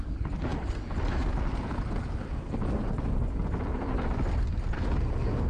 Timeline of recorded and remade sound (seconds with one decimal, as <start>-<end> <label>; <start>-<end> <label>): 0.0-5.5 recorded